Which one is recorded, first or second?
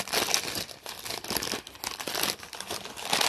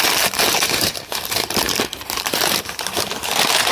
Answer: first